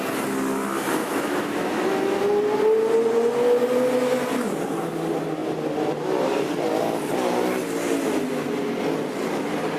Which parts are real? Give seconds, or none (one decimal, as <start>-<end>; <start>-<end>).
0.0-1.0; 2.2-9.8